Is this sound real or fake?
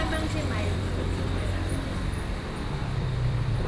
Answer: fake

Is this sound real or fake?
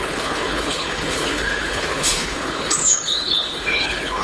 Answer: fake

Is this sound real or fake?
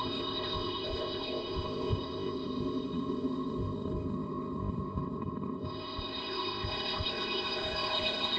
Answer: fake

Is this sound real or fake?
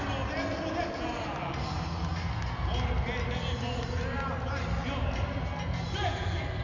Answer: real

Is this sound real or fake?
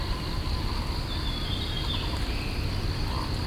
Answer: real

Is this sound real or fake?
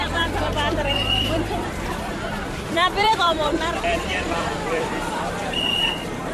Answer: fake